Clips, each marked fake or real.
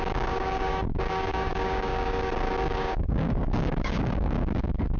fake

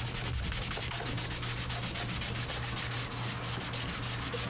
real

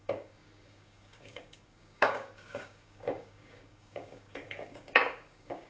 fake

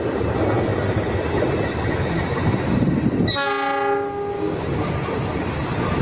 real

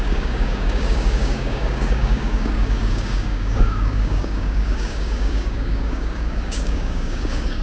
fake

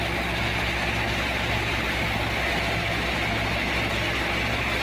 real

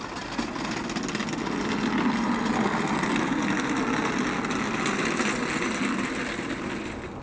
real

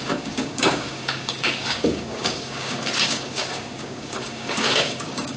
fake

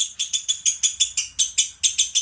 real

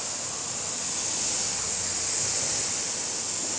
real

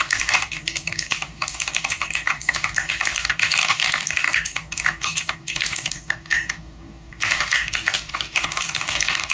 fake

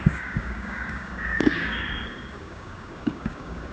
fake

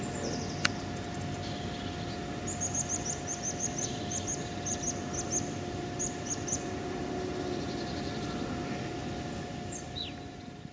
real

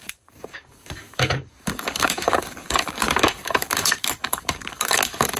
fake